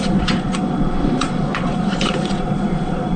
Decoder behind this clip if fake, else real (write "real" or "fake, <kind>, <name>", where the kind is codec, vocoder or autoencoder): fake, vocoder, Vocos